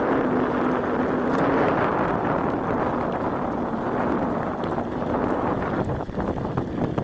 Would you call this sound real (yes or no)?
yes